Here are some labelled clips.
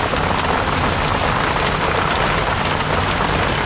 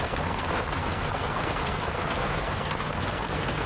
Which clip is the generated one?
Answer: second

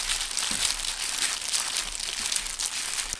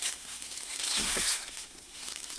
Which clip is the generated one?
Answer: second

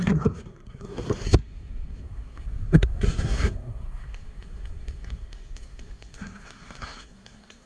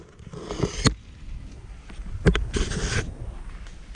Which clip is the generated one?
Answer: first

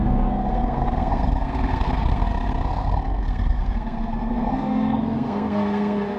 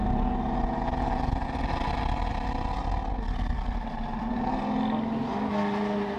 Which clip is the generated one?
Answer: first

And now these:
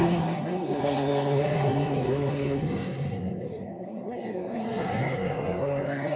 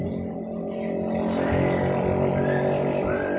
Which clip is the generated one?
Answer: first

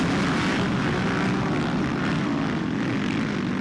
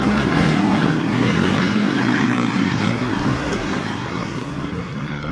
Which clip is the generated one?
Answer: second